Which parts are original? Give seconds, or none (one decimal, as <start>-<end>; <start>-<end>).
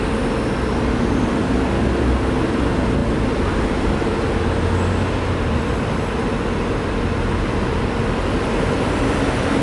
0.0-9.6